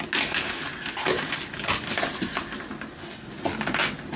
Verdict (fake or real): real